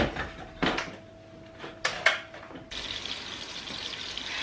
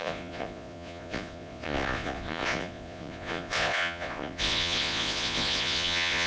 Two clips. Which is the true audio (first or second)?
first